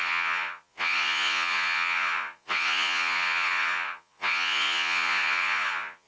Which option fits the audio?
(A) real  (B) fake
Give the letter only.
B